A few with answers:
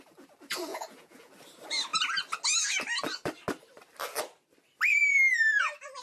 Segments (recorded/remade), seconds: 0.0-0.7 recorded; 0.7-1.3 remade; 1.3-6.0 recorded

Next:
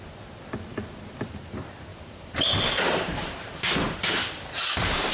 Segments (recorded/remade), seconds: 0.0-0.7 recorded; 0.7-1.3 remade; 1.3-1.9 recorded; 1.9-5.1 remade

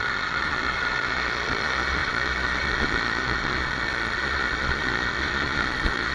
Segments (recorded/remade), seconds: 0.0-6.1 remade

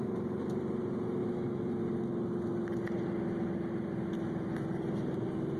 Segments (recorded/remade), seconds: 0.0-1.2 recorded; 1.2-1.8 remade; 1.8-5.6 recorded

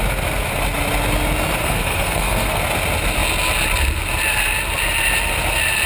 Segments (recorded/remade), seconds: 0.0-1.6 recorded; 1.6-2.6 remade; 2.6-5.9 recorded

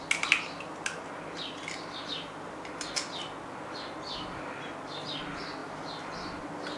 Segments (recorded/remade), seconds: 0.0-6.8 recorded

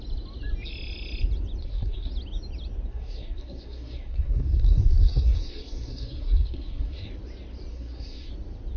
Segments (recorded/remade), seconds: 0.0-1.6 recorded; 1.6-2.1 remade; 2.1-2.9 recorded; 2.9-7.1 remade; 7.1-7.7 recorded; 7.7-8.3 remade; 8.3-8.8 recorded

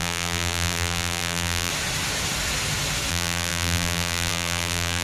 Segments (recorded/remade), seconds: 0.0-1.7 remade; 1.7-3.1 recorded; 3.1-5.0 remade